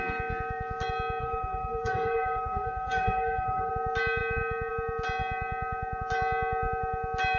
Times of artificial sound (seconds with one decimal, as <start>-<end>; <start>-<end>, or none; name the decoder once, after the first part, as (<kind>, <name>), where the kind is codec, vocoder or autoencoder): 1.2-3.7 (codec, SNAC)

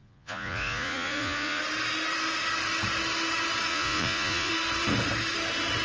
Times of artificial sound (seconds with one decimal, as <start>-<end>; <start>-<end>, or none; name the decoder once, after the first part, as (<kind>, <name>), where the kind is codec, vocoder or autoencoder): 0.0-1.6 (vocoder, Vocos); 3.7-4.5

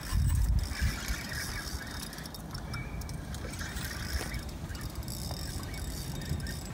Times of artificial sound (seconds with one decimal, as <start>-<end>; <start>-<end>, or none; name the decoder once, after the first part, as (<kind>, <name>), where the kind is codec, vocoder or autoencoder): none

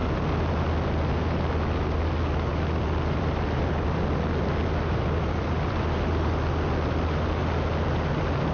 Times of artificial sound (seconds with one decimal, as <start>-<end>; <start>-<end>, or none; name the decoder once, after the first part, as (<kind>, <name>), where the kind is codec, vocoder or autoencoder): 2.5-3.6 (vocoder, BigVGAN v2); 4.6-6.3